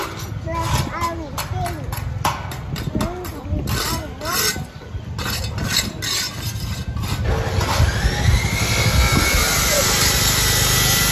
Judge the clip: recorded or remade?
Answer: recorded